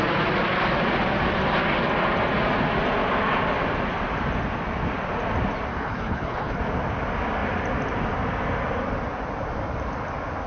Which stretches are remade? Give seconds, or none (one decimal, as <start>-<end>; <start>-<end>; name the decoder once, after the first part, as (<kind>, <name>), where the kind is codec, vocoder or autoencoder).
5.7-6.6 (codec, HILCodec)